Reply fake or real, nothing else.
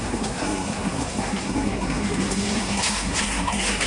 fake